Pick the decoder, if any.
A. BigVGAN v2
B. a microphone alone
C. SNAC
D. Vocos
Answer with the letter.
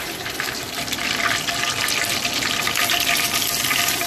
A